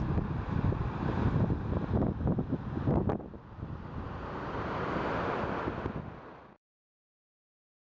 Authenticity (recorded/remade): recorded